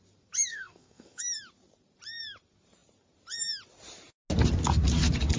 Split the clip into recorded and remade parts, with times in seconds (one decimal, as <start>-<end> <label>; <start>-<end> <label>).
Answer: 0.0-0.5 recorded; 0.5-1.2 remade; 1.2-5.4 recorded